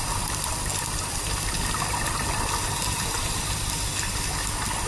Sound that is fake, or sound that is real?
real